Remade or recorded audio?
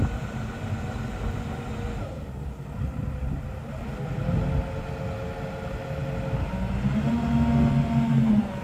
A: recorded